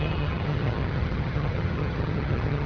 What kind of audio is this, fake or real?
fake